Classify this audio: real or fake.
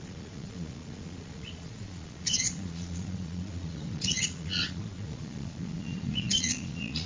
fake